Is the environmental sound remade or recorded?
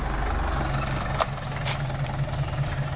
recorded